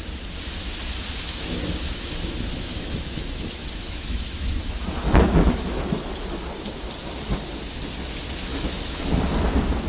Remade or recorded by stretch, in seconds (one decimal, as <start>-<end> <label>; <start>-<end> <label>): 0.0-1.2 recorded; 1.2-6.4 remade; 6.4-8.5 recorded; 8.5-9.2 remade; 9.2-9.9 recorded

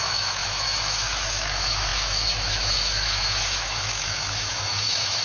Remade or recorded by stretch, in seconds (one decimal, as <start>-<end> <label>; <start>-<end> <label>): 0.0-5.2 remade

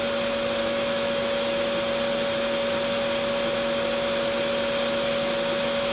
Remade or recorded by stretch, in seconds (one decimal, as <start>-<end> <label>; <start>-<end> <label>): 0.0-0.6 recorded; 0.6-1.6 remade; 1.6-5.9 recorded

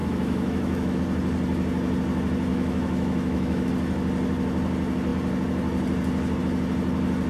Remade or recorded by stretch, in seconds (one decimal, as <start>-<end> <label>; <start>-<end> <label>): 0.0-1.0 remade; 1.0-2.5 recorded; 2.5-3.7 remade; 3.7-7.3 recorded

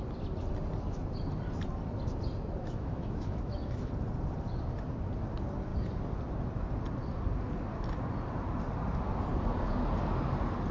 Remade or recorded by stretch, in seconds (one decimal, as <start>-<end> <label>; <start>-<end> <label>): 0.0-2.6 recorded; 2.6-3.9 remade; 3.9-10.7 recorded

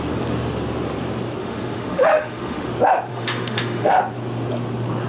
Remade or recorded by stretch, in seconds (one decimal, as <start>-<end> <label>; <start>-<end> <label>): 0.0-1.4 recorded; 1.4-2.7 remade; 2.7-3.1 recorded; 3.1-4.0 remade; 4.0-5.1 recorded

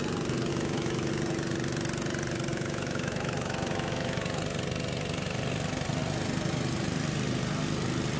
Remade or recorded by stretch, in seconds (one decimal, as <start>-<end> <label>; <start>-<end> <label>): 0.0-0.5 recorded; 0.5-1.1 remade; 1.1-2.5 recorded; 2.5-4.4 remade; 4.4-8.2 recorded